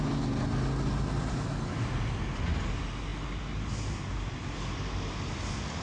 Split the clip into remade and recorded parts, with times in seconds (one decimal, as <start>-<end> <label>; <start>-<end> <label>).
0.0-5.8 recorded